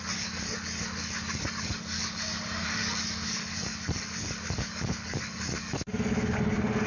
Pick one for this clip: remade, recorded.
remade